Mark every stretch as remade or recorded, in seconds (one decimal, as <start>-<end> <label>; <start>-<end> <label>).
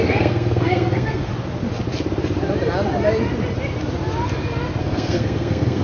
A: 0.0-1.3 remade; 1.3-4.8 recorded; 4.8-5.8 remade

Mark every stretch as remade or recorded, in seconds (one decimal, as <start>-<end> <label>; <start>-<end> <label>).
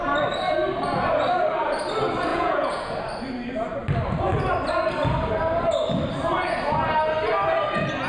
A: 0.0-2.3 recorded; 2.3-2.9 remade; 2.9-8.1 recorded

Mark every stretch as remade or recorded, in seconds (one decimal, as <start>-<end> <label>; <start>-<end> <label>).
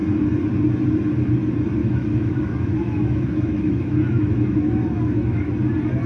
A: 0.0-1.8 recorded; 1.8-5.5 remade; 5.5-6.1 recorded